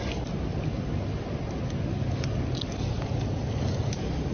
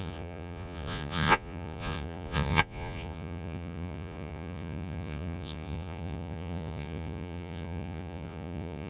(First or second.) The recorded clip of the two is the first